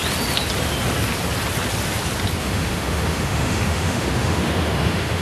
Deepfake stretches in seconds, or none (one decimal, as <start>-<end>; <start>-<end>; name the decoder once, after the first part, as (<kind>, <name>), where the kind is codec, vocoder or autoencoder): 2.4-5.2 (autoencoder, DAC-VAE)